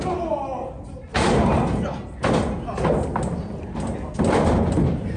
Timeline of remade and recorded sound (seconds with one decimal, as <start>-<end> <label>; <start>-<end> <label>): 0.0-5.2 recorded